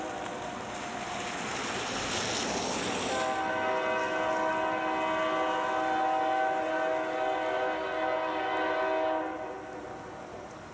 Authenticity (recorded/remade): recorded